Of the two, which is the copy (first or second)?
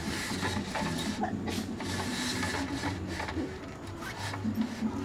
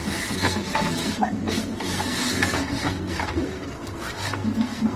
second